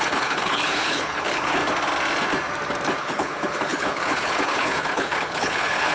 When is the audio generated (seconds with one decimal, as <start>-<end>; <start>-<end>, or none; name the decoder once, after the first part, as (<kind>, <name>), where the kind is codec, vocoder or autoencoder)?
0.0-1.6 (codec, HILCodec); 3.0-5.9